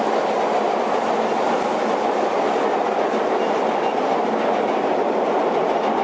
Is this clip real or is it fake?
real